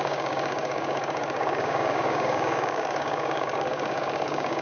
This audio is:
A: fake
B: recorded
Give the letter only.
A